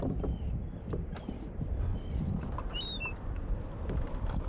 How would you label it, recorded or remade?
recorded